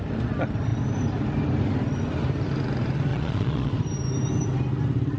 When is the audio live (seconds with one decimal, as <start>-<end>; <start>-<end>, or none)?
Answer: 0.0-3.1; 3.7-5.2